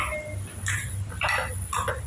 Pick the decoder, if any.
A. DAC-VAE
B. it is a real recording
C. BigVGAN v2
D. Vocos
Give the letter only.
B